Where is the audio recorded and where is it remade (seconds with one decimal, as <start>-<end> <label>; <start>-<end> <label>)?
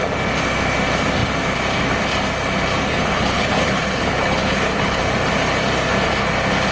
0.0-2.9 recorded; 2.9-5.0 remade; 5.0-6.7 recorded